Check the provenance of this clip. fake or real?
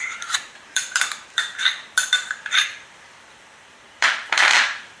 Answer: fake